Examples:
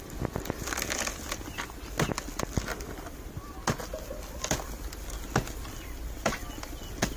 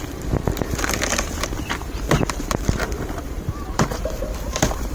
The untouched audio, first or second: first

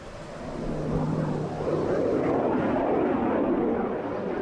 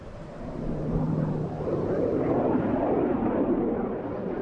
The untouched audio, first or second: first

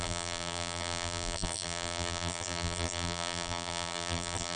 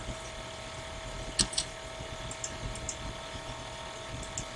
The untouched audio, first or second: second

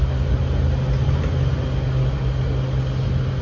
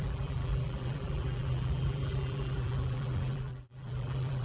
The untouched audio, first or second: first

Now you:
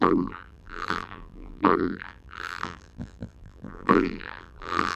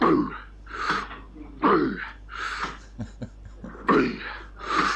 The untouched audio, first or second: second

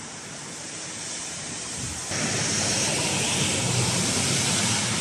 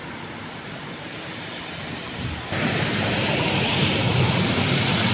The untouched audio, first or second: first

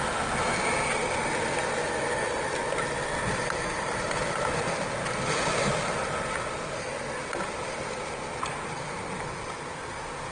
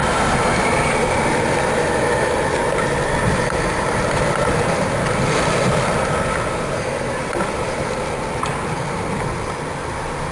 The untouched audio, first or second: first